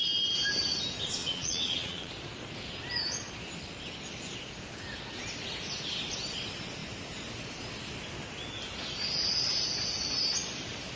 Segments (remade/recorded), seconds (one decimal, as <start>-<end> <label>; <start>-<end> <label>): 0.0-1.2 recorded; 1.2-2.1 remade; 2.1-11.0 recorded